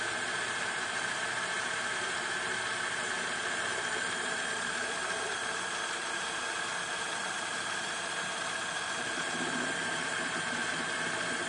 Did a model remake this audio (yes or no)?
yes